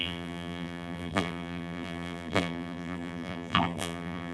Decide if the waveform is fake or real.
fake